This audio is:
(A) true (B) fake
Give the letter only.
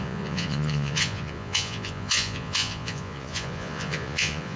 B